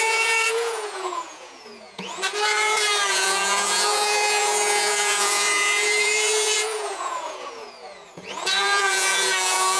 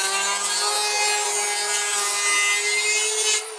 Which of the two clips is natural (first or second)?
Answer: second